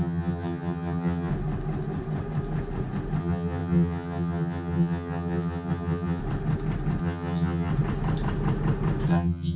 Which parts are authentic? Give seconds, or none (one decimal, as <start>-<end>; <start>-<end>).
1.3-3.2; 6.2-7.0; 7.7-9.1